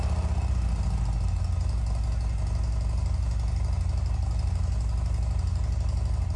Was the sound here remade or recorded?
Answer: recorded